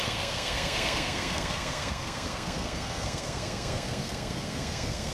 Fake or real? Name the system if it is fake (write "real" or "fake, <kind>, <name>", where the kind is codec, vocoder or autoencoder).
fake, codec, SNAC